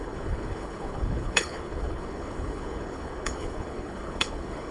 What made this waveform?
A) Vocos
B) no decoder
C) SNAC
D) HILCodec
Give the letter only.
D